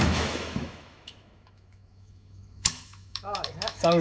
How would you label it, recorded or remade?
remade